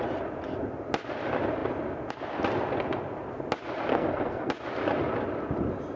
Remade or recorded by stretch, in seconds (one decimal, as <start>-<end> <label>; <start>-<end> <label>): 0.0-3.9 recorded; 3.9-4.5 remade; 4.5-6.0 recorded